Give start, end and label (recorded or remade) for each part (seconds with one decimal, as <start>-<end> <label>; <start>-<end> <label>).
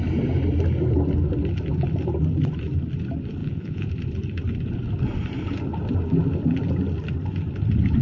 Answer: 0.0-3.4 recorded; 3.4-3.9 remade; 3.9-8.0 recorded